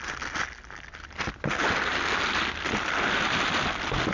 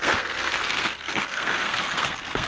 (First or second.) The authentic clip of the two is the first